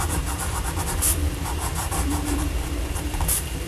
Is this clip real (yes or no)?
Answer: no